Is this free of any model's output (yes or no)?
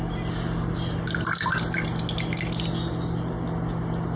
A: yes